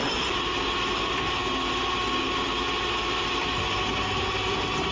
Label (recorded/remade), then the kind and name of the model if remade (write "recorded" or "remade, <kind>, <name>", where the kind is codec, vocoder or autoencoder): recorded